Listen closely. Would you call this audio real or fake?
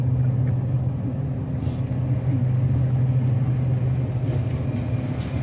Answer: real